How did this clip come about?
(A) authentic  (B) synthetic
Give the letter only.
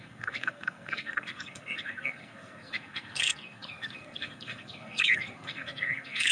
B